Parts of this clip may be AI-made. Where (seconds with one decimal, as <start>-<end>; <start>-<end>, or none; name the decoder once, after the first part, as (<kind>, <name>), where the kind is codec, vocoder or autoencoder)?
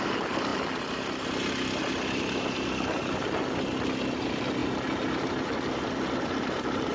none